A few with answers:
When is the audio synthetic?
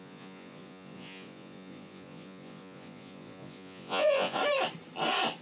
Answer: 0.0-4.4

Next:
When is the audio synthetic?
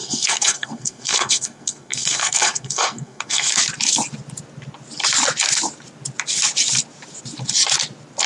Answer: 0.0-3.5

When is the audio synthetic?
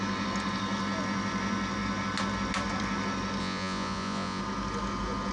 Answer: 3.4-4.4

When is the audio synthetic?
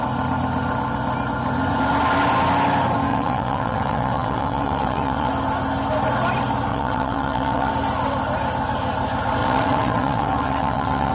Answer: 3.1-5.3; 6.7-7.7; 9.4-11.1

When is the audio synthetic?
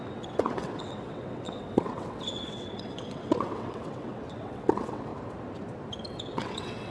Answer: 0.0-5.1; 6.1-6.9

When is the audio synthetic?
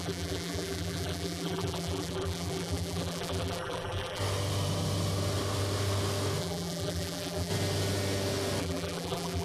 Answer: 0.0-4.2; 6.4-7.5; 8.6-9.4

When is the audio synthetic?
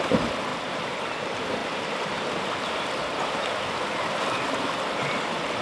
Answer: 0.0-5.6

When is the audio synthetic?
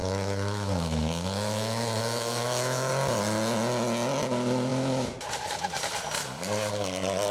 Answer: 0.0-2.9